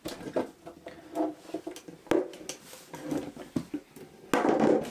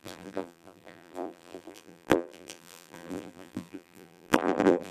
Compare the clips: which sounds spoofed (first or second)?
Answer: second